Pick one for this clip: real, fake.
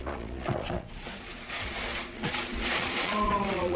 fake